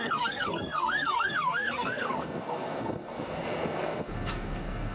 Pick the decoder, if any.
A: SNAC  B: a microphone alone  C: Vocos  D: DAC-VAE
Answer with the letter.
A